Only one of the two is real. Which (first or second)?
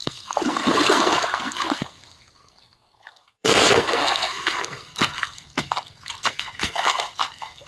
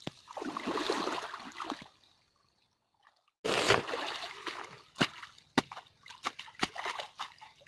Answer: second